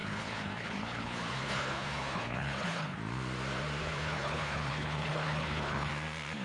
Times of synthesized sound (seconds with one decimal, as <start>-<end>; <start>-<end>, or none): 0.0-3.0; 3.8-5.9